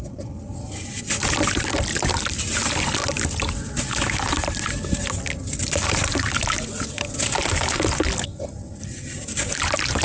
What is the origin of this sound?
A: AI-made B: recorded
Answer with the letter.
B